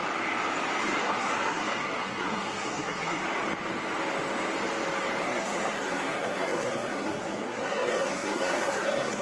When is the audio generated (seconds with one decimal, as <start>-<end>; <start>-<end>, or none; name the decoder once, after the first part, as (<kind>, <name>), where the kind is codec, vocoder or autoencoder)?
0.8-3.2 (codec, SNAC); 5.2-9.2